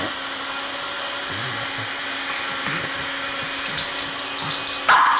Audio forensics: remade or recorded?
recorded